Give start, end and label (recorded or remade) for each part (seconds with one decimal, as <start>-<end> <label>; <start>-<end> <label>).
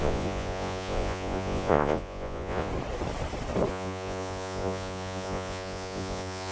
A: 0.0-2.7 remade; 2.7-3.7 recorded; 3.7-6.5 remade